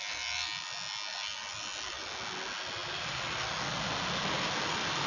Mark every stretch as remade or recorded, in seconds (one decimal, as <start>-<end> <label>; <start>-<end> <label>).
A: 0.0-5.1 recorded